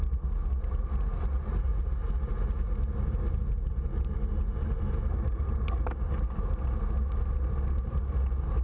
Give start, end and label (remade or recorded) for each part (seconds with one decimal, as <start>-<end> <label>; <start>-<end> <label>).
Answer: 0.0-8.6 recorded